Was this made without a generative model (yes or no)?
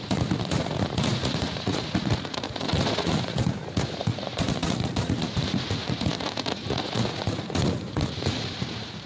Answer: no